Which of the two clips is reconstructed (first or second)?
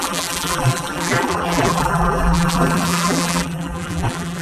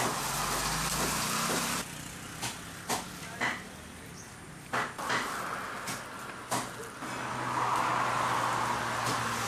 first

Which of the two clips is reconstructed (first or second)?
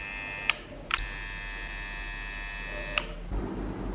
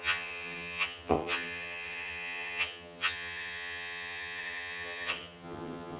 second